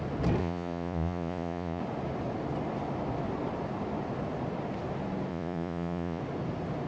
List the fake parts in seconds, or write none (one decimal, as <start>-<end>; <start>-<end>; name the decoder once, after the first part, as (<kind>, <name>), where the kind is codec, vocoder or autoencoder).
0.4-1.8 (vocoder, Vocos); 5.3-6.2